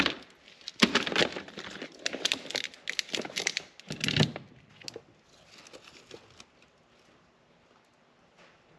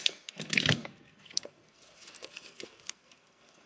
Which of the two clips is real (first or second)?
first